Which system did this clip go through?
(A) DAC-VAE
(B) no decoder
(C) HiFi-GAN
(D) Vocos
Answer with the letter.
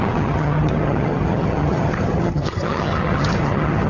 C